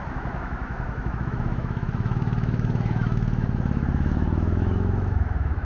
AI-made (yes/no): yes